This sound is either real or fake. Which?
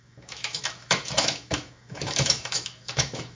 fake